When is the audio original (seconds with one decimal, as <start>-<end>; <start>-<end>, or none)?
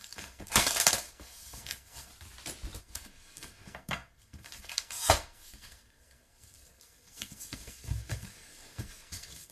2.1-2.8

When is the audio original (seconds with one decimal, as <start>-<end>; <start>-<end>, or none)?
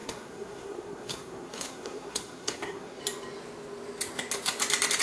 3.0-5.0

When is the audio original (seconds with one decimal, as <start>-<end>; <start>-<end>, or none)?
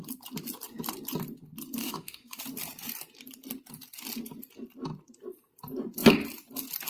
0.0-1.8; 2.4-6.9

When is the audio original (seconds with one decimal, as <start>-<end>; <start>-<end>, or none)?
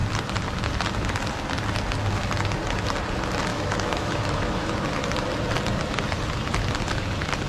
0.0-3.5; 4.7-7.5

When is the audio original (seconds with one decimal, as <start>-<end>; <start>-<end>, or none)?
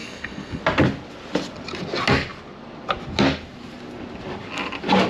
0.6-5.1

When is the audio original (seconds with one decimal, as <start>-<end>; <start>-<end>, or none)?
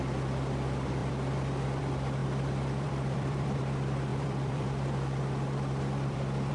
0.0-1.0; 1.8-2.2; 3.6-4.1